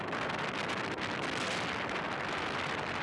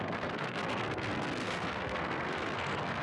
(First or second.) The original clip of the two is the first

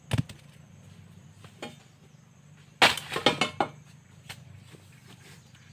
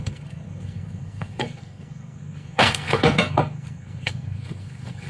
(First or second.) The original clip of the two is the first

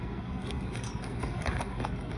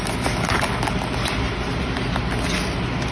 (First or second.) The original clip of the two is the second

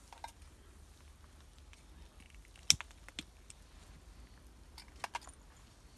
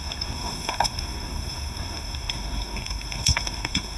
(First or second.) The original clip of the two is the first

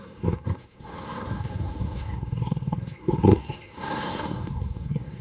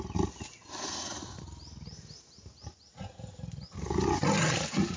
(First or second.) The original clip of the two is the second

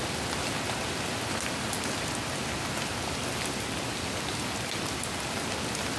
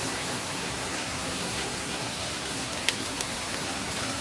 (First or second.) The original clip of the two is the first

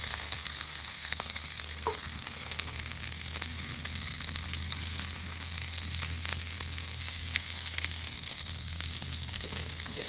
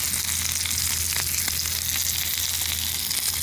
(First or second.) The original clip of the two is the second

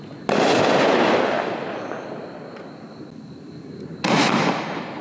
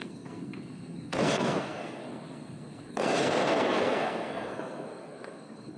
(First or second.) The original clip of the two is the first